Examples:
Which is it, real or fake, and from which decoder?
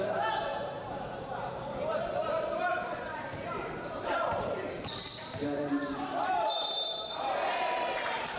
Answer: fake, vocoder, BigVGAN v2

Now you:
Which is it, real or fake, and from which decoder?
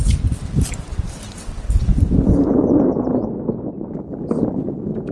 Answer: fake, vocoder, BigVGAN v2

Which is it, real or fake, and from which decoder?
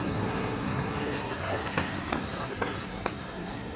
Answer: fake, codec, SNAC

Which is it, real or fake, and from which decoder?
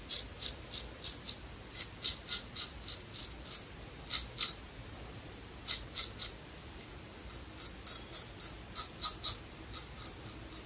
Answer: real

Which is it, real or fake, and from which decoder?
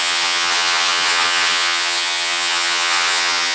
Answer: fake, vocoder, HiFi-GAN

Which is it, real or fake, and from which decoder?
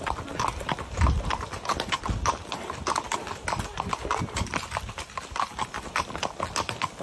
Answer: real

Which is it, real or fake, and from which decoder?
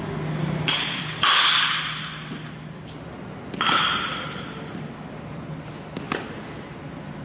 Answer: real